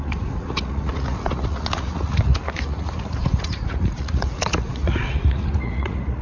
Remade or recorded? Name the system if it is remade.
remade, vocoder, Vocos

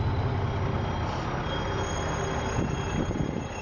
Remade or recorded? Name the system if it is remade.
recorded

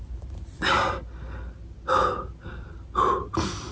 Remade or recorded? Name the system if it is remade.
recorded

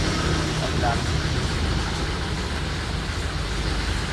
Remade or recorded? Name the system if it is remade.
recorded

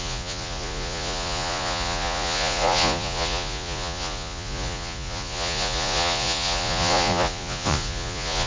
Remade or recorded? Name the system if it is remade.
remade, vocoder, Vocos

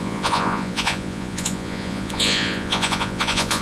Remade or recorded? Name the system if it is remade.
remade, vocoder, Vocos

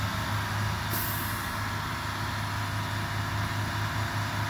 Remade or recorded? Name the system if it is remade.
recorded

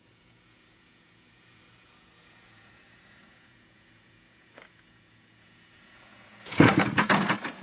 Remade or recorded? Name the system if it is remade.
remade, vocoder, Vocos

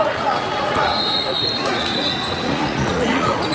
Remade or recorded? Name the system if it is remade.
remade, vocoder, Vocos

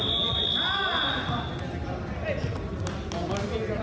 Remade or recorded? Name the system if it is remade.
recorded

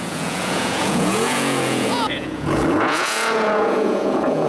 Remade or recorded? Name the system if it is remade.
remade, vocoder, Vocos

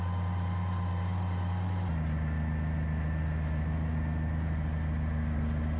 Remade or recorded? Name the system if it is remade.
recorded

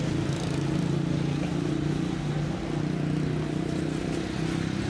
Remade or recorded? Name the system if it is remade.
recorded